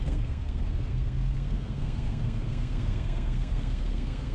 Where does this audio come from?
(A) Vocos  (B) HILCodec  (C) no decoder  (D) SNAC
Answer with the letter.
D